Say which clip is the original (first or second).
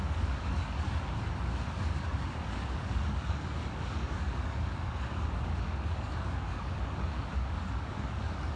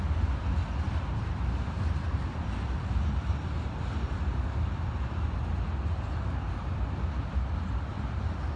second